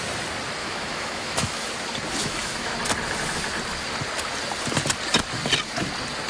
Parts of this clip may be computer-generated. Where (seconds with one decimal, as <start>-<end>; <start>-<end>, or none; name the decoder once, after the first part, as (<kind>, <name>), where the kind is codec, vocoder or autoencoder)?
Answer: 0.6-1.7 (autoencoder, DAC-VAE); 2.2-2.8